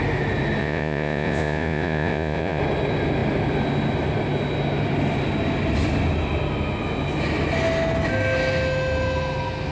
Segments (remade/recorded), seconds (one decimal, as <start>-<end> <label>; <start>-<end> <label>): 0.0-0.6 recorded; 0.6-2.6 remade; 2.6-9.7 recorded